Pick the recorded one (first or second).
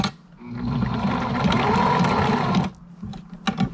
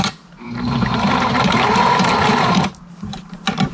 first